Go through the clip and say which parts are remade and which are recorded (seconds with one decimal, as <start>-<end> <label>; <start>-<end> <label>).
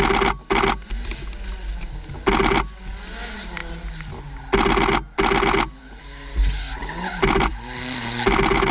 0.0-8.7 recorded